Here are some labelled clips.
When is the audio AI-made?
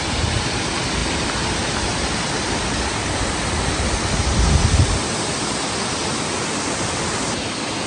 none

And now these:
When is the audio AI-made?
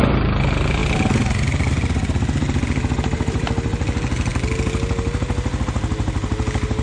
none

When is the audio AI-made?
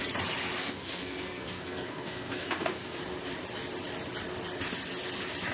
0.6-3.0 (codec, SNAC)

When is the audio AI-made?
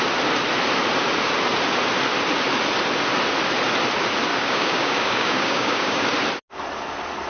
4.3-6.1 (codec, DAC)